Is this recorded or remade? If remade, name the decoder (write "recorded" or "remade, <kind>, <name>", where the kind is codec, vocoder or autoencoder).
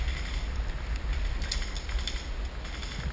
recorded